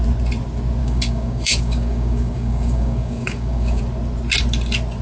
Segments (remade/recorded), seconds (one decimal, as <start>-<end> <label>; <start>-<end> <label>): 0.0-0.8 recorded; 0.8-3.8 remade; 3.8-5.0 recorded